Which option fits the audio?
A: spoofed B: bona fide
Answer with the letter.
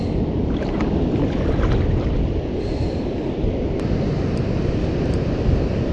B